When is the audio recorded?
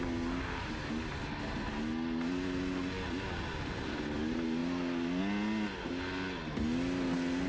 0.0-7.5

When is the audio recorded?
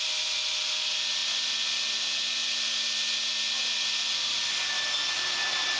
0.0-5.8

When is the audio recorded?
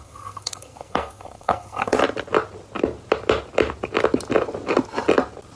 2.0-5.6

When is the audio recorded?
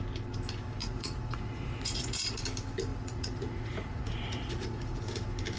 0.0-0.8; 2.4-2.9; 5.0-5.6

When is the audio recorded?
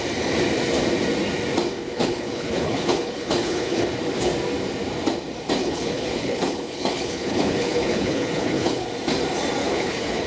0.0-1.8; 3.8-5.6; 8.9-9.6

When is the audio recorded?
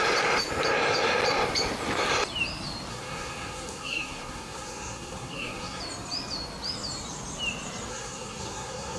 0.0-2.9; 5.8-7.9